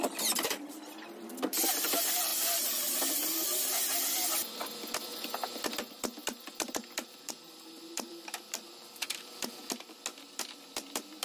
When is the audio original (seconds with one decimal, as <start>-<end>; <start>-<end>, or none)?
2.3-4.7; 9.6-10.2

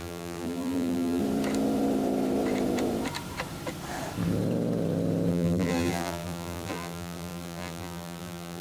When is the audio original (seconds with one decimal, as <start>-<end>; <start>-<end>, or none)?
1.2-5.3

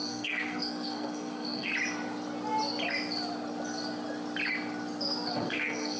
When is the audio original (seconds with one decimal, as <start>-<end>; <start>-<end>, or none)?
1.7-5.3

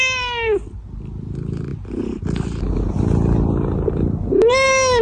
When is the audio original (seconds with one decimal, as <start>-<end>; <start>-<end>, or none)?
0.0-5.0

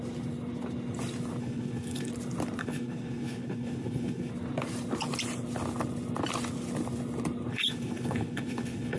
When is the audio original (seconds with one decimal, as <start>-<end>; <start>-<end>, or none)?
0.0-1.4; 2.1-2.6; 4.3-7.5

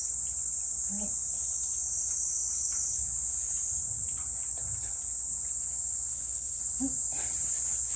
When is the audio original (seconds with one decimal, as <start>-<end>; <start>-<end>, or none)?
0.0-6.1; 6.6-8.0

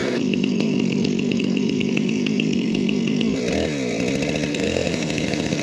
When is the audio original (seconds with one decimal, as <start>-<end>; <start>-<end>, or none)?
3.4-4.5

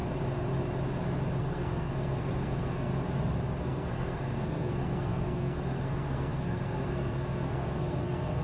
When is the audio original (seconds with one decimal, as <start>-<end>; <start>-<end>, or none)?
0.0-1.4; 2.9-3.6